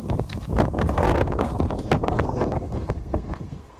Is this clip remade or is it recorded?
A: remade